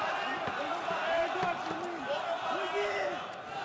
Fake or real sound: real